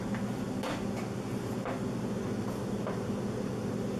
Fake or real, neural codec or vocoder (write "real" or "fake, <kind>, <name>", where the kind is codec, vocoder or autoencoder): real